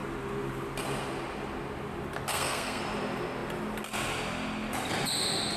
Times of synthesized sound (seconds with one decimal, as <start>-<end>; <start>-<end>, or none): 2.3-2.8